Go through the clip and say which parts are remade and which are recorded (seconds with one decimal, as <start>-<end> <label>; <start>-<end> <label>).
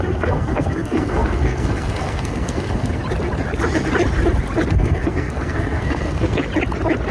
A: 0.0-3.0 remade; 3.0-4.7 recorded; 4.7-6.4 remade; 6.4-7.1 recorded